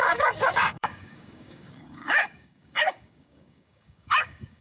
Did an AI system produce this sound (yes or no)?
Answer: yes